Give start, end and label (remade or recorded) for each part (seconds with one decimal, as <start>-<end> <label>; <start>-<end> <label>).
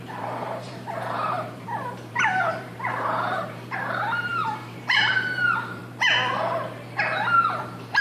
0.0-5.8 remade; 5.8-7.0 recorded; 7.0-8.0 remade